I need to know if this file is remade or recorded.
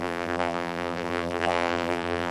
remade